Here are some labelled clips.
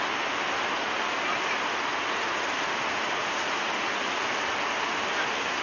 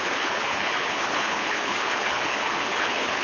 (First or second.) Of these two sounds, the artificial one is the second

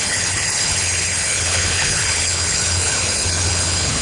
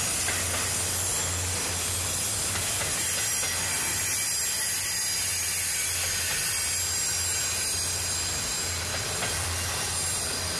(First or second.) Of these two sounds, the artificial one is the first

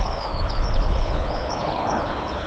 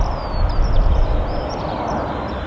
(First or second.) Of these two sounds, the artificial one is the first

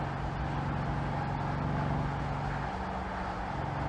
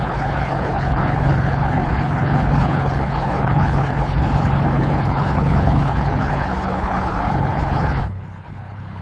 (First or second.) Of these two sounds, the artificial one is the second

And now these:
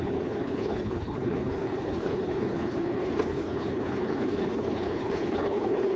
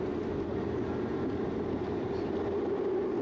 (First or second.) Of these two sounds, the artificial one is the first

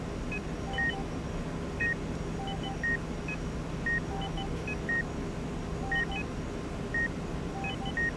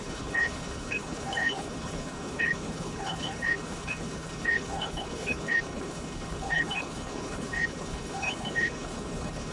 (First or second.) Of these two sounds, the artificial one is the second